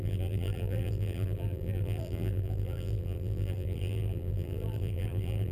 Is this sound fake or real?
fake